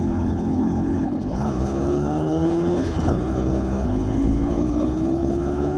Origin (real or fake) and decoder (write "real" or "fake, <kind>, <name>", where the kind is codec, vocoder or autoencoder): fake, codec, HILCodec